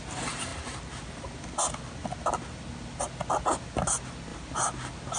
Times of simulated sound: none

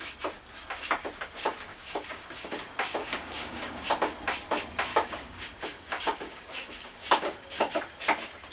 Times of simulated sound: 1.7-2.5 (codec, DAC); 3.0-3.9; 4.9-7.8

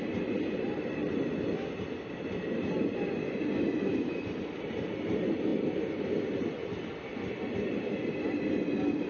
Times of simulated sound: none

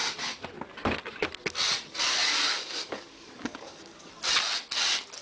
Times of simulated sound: 2.5-4.1 (codec, DAC)